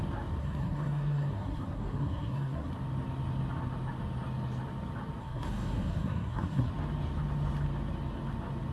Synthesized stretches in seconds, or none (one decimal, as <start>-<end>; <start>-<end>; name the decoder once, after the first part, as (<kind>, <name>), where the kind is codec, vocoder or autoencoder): 0.4-2.7 (codec, SNAC); 5.2-6.7